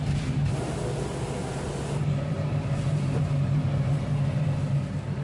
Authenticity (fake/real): real